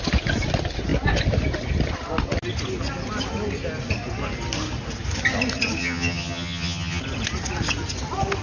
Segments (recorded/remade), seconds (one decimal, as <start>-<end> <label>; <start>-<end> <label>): 0.0-5.8 recorded; 5.8-7.0 remade; 7.0-8.4 recorded